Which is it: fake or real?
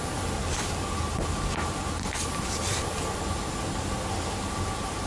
real